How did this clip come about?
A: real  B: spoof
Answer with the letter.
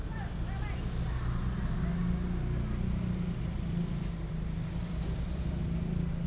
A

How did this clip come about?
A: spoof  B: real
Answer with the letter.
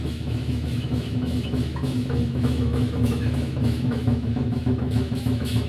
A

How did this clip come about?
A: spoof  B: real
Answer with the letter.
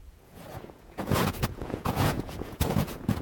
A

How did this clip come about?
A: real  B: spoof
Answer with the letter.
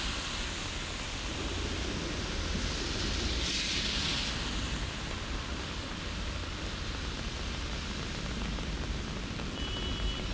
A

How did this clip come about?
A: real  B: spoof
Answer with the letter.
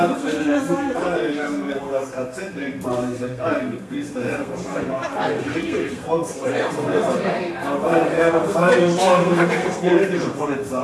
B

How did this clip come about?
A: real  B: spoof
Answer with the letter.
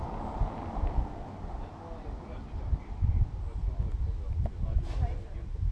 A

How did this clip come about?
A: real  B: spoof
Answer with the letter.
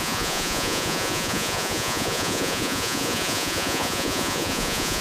B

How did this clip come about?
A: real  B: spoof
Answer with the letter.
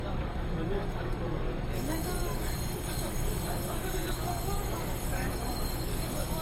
B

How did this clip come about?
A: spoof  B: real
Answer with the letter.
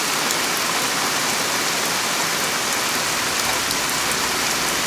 B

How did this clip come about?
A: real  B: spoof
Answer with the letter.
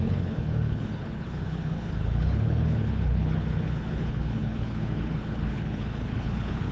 B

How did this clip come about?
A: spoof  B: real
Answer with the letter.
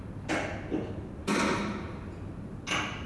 B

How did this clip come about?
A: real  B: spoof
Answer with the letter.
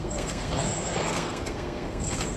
B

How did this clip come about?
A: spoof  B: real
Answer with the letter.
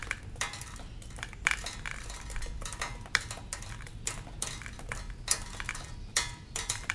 B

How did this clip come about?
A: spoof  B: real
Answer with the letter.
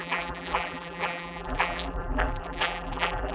A